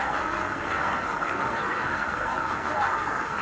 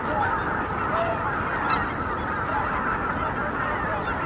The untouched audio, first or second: second